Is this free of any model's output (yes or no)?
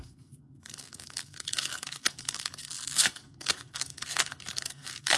no